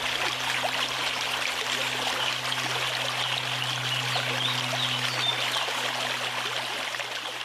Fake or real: real